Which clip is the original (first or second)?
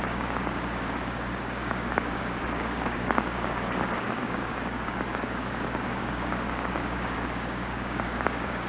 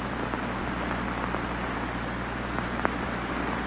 second